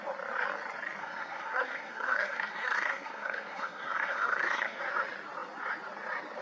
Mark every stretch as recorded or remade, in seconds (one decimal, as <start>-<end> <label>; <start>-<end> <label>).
0.0-1.0 recorded; 1.0-4.8 remade; 4.8-6.4 recorded